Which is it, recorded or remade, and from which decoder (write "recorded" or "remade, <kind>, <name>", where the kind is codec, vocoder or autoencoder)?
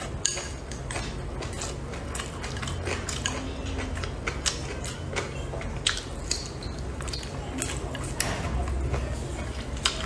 recorded